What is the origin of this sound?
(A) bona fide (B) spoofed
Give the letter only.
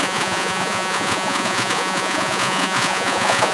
B